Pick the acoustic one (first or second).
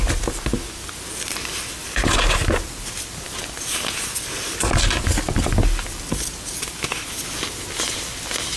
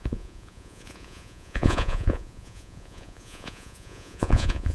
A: first